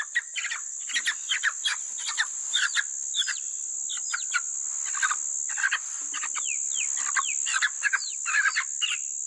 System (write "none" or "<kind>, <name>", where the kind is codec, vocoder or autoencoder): none